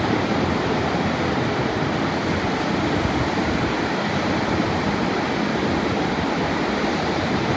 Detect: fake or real fake